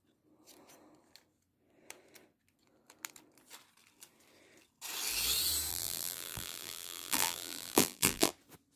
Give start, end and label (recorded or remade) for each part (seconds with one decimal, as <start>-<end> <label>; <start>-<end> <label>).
0.0-5.7 recorded; 5.7-8.3 remade; 8.3-8.8 recorded

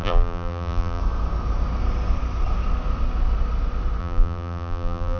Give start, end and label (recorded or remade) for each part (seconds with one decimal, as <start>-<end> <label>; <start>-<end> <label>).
0.0-1.0 remade; 1.0-4.0 recorded; 4.0-5.2 remade

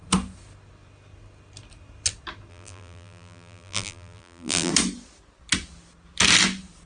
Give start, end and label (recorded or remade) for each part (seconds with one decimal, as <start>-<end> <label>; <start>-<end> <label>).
0.0-2.5 recorded; 2.5-4.7 remade; 4.7-6.9 recorded

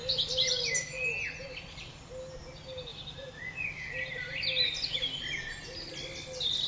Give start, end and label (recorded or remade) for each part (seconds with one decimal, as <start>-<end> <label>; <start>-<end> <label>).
0.0-1.4 recorded; 1.4-2.1 remade; 2.1-2.9 recorded; 2.9-4.4 remade; 4.4-6.7 recorded